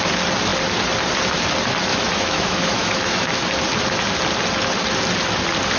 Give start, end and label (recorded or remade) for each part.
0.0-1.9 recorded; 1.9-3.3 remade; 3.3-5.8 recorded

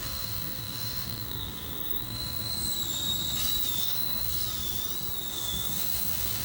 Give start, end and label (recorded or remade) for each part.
0.0-2.5 remade; 2.5-3.8 recorded; 3.8-4.3 remade; 4.3-5.3 recorded; 5.3-6.4 remade

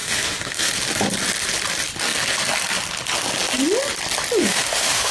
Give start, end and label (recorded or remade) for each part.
0.0-0.7 remade; 0.7-4.4 recorded; 4.4-5.1 remade

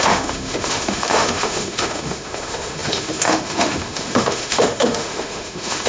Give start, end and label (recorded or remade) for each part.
0.0-5.9 remade

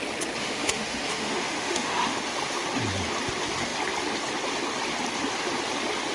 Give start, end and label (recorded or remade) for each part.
0.0-0.4 recorded; 0.4-2.2 remade; 2.2-6.1 recorded